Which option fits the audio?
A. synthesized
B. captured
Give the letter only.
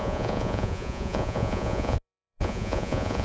A